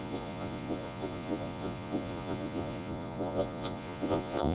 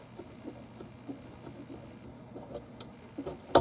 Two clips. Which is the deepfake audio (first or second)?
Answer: first